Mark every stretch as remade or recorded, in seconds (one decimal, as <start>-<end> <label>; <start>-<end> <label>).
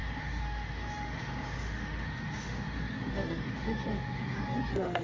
0.0-5.0 remade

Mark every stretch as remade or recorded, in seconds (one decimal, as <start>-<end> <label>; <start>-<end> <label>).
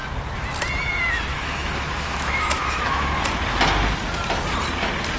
0.0-1.3 recorded; 1.3-3.1 remade; 3.1-5.2 recorded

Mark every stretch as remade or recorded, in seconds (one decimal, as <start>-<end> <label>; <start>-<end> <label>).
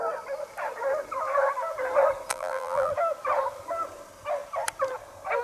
0.0-2.3 recorded; 2.3-2.9 remade; 2.9-5.4 recorded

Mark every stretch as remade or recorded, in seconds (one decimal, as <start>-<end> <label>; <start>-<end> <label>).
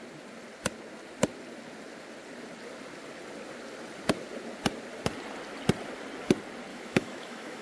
0.0-6.7 recorded; 6.7-7.6 remade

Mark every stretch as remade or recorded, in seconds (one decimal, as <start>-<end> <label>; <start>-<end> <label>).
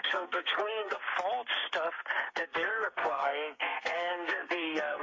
0.0-1.0 remade; 1.0-2.3 recorded; 2.3-5.0 remade